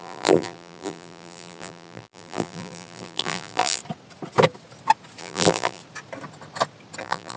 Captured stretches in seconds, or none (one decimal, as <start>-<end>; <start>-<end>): 3.8-5.2; 5.8-7.0